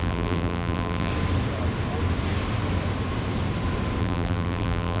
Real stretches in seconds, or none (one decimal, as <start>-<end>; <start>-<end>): 1.1-4.0